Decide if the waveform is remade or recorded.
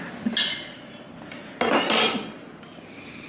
recorded